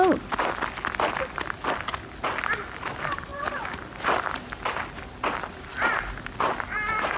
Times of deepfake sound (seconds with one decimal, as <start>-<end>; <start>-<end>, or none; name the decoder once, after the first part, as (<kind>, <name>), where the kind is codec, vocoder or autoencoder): none